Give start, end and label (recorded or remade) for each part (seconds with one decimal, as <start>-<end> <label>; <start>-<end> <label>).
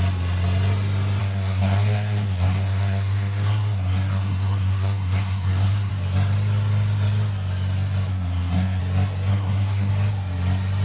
0.0-1.2 recorded; 1.2-5.9 remade; 5.9-8.1 recorded; 8.1-8.8 remade; 8.8-9.3 recorded; 9.3-9.9 remade; 9.9-10.8 recorded